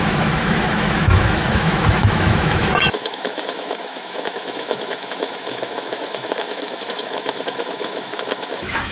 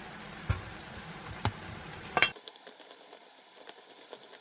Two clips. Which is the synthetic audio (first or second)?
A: first